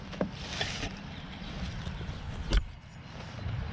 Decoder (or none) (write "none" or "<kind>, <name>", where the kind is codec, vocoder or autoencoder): vocoder, BigVGAN v2